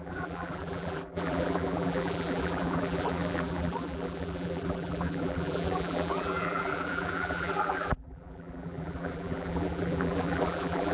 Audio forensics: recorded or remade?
remade